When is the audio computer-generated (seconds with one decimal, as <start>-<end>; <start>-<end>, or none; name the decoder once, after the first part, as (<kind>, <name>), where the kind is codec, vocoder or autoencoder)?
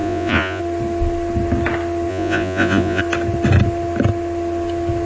0.0-0.6 (vocoder, Vocos); 2.1-3.0